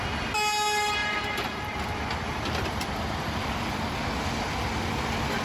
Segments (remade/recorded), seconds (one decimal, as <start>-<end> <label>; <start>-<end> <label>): 0.0-1.0 recorded; 1.0-4.0 remade; 4.0-5.4 recorded